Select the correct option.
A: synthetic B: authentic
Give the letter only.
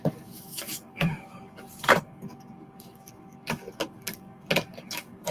A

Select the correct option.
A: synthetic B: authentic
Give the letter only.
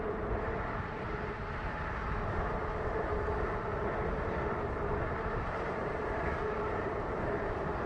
A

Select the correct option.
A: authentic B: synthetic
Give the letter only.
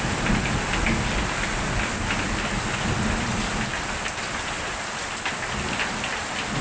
A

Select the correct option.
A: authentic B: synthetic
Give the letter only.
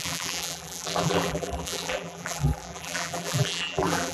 B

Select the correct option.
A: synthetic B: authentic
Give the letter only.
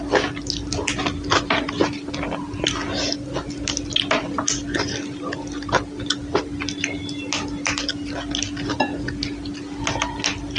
B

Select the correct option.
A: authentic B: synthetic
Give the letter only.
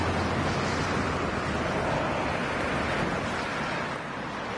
A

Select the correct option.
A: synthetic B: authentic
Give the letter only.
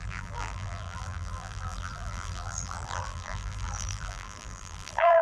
A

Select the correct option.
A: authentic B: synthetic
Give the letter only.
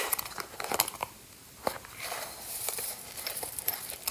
B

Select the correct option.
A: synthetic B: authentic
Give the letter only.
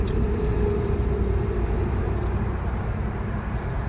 A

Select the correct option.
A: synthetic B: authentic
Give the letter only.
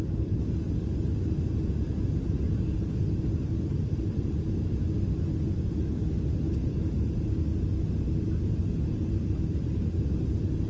B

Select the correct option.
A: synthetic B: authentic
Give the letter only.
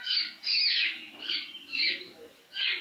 A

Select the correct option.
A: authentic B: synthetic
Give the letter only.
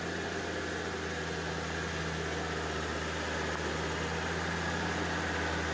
A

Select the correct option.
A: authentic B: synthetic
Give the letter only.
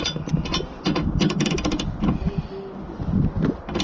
A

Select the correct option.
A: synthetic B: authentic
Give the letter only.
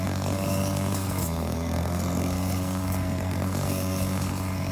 A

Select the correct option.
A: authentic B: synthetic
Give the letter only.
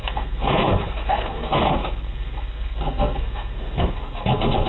B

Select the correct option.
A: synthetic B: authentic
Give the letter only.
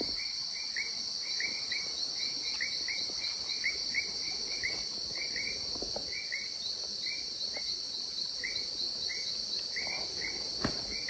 B